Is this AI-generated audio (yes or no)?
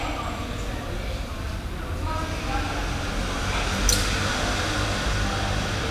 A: no